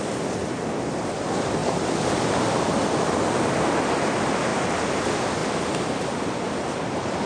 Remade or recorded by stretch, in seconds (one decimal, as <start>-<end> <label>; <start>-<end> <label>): 0.0-0.4 recorded; 0.4-1.0 remade; 1.0-1.6 recorded; 1.6-2.9 remade; 2.9-5.4 recorded; 5.4-7.3 remade